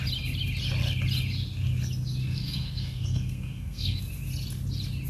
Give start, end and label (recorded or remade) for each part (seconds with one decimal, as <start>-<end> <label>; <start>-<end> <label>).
0.0-2.2 recorded; 2.2-4.0 remade; 4.0-5.1 recorded